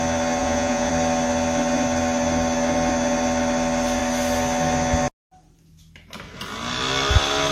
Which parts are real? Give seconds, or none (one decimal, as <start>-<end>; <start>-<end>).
0.0-0.4; 0.9-7.5